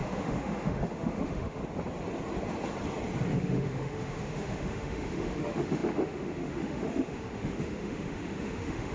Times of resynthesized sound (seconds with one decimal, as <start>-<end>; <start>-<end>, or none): 0.0-1.6; 3.3-8.9